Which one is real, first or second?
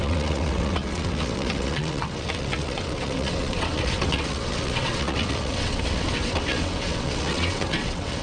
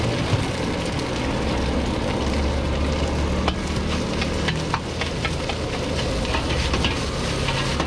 second